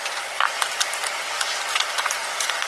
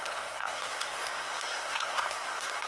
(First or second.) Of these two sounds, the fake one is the second